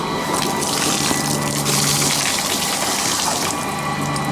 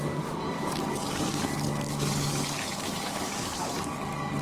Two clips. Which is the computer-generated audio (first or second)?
second